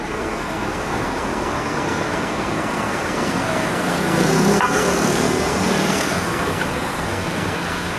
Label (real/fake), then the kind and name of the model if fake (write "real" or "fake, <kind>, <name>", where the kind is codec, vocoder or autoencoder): fake, codec, SNAC